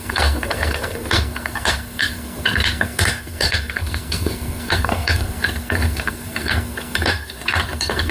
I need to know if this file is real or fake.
fake